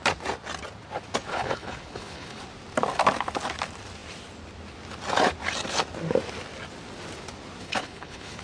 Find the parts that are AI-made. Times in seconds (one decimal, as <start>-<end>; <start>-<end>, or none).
1.3-2.4; 7.6-8.4